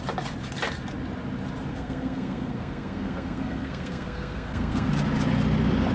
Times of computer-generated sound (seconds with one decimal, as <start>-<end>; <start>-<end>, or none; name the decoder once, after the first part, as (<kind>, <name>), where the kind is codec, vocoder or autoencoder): 1.7-4.9 (codec, SNAC)